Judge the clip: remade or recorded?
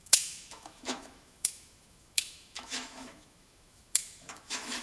remade